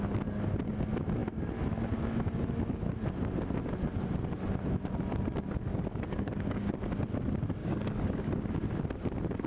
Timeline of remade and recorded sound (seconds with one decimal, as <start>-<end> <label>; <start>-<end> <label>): 0.0-5.7 recorded; 5.7-6.8 remade; 6.8-7.6 recorded; 7.6-8.3 remade; 8.3-9.5 recorded